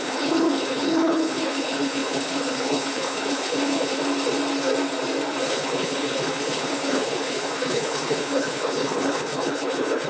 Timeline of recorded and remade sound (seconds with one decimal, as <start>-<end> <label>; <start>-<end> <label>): 0.0-4.0 remade; 4.0-5.5 recorded; 5.5-10.1 remade